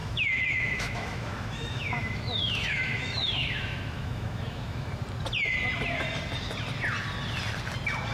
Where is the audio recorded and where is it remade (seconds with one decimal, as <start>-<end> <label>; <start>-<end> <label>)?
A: 0.0-4.9 remade; 4.9-8.1 recorded

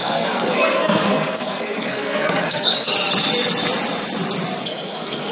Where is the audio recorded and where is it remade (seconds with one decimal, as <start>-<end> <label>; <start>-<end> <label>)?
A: 0.0-2.9 remade; 2.9-4.6 recorded; 4.6-5.3 remade